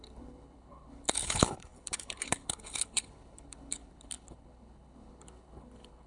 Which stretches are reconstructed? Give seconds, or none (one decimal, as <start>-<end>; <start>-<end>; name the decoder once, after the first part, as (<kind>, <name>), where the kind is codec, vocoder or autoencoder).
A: 0.0-6.1 (codec, HILCodec)